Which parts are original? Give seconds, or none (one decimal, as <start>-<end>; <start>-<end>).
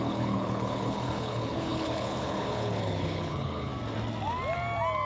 3.7-5.1